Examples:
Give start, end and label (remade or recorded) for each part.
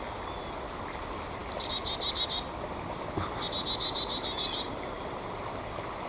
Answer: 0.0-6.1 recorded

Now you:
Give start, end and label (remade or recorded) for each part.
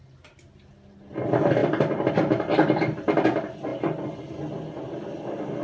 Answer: 0.0-5.6 recorded